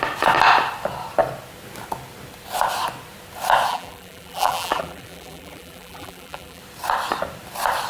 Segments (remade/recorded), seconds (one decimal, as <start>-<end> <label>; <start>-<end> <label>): 0.0-3.7 recorded; 3.7-6.6 remade; 6.6-7.9 recorded